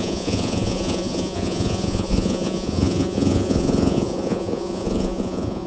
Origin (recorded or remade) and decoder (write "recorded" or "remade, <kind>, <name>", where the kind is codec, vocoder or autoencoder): remade, vocoder, Vocos